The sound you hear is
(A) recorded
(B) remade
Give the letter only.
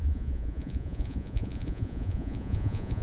B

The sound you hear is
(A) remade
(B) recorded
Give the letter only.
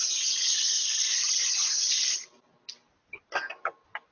B